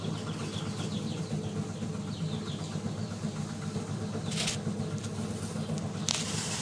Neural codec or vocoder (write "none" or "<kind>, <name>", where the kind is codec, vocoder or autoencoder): none